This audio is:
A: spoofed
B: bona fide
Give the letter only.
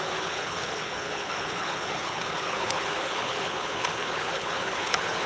A